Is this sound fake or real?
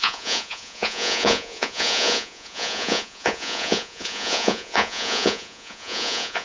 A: fake